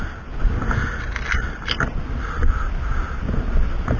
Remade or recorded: recorded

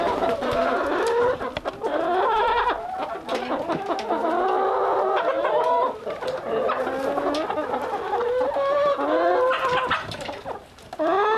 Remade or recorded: recorded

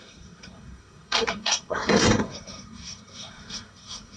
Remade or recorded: remade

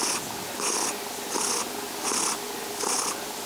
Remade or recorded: recorded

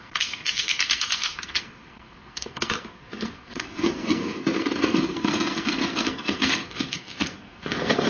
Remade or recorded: remade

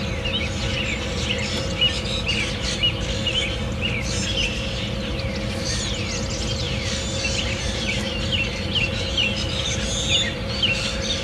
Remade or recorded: recorded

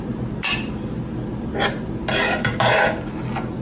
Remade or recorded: recorded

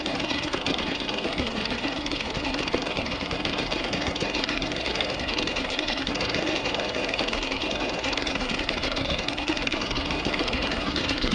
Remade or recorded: remade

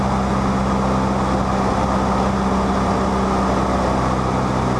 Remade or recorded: recorded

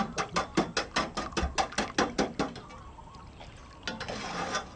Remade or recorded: recorded